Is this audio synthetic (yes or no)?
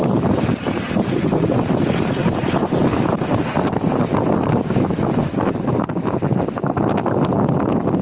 no